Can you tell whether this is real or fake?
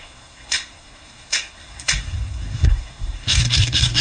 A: fake